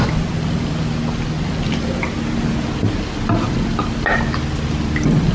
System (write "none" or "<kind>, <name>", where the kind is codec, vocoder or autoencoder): none